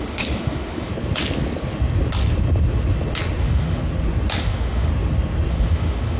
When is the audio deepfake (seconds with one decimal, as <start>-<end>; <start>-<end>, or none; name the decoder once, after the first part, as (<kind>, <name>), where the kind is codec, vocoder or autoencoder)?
0.0-0.9 (autoencoder, DAC-VAE); 3.4-3.8; 4.4-4.9; 5.5-6.2